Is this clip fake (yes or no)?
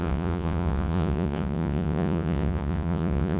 yes